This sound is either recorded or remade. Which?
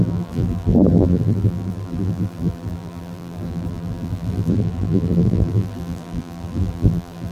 remade